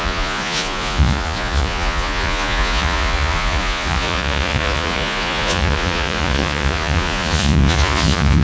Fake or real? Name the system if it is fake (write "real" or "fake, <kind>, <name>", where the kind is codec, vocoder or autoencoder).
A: fake, vocoder, Vocos